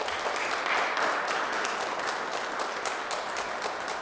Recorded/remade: recorded